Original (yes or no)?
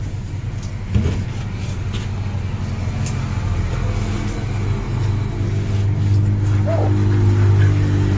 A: yes